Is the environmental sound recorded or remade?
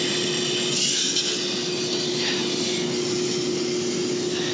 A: recorded